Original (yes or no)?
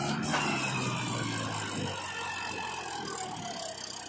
yes